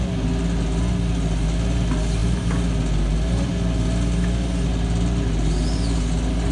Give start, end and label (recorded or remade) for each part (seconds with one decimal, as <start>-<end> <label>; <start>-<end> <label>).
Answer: 0.0-6.5 recorded